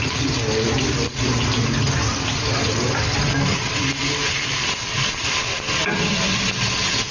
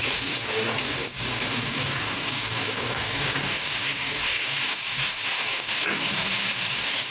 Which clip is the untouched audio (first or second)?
first